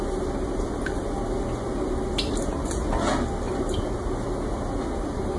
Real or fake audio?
real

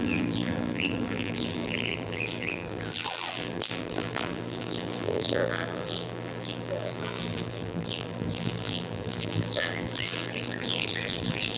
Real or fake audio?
fake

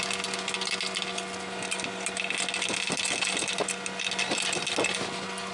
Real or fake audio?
real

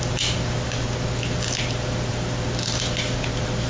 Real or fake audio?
real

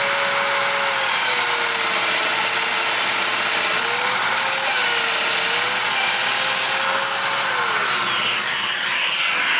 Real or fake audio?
real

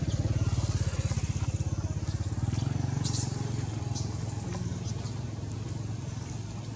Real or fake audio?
real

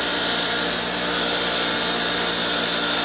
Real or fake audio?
real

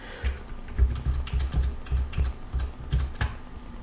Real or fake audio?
real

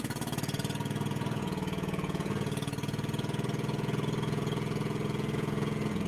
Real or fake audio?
fake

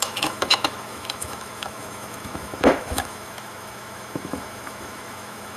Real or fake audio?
fake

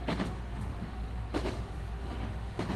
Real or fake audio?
fake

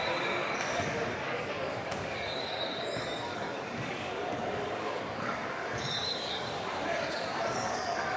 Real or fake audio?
fake